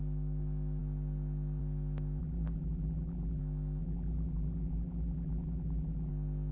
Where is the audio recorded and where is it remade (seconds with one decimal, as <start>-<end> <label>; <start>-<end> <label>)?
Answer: 0.0-2.2 recorded; 2.2-3.4 remade; 3.4-3.8 recorded; 3.8-6.1 remade; 6.1-6.5 recorded